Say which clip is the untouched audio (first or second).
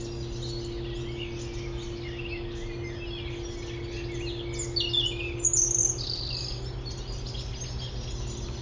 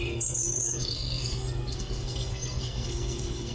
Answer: first